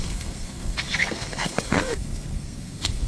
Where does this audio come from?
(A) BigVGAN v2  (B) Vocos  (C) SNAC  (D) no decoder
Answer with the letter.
C